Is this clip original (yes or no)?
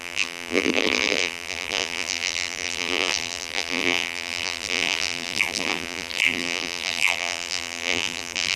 no